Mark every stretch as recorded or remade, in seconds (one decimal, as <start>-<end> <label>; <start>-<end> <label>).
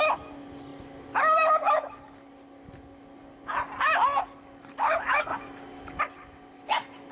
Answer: 0.0-7.1 recorded